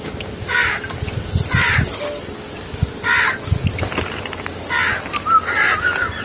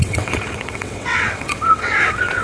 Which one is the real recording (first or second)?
first